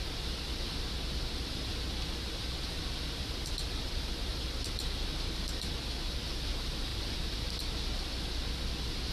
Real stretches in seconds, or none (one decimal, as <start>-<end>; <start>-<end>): 0.0-6.9; 7.5-9.1